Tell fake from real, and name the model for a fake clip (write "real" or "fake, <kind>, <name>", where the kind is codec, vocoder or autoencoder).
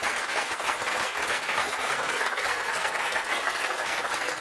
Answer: fake, codec, SNAC